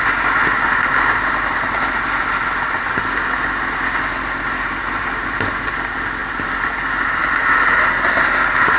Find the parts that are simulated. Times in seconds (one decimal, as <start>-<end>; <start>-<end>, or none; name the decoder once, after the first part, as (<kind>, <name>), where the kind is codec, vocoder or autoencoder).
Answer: none